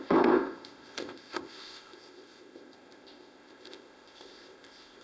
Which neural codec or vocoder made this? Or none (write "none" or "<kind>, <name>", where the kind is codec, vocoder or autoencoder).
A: codec, ZipCodec